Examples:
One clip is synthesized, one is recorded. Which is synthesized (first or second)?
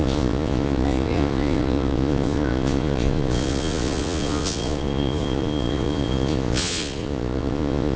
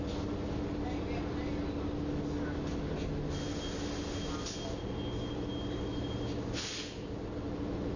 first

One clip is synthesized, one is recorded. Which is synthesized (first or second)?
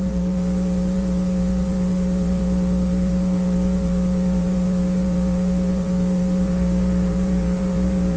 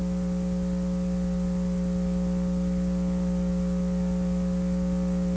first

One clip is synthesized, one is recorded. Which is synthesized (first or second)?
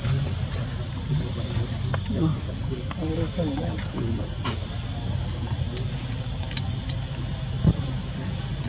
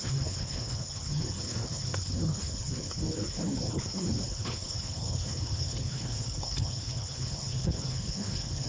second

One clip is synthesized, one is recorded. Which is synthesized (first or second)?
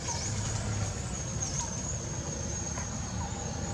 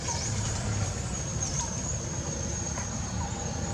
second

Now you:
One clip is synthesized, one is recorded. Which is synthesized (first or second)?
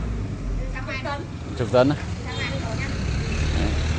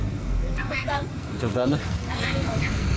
second